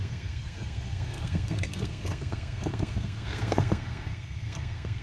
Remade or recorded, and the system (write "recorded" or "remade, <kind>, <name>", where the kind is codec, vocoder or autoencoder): remade, codec, SNAC